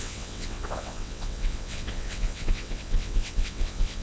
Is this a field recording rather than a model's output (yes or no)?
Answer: no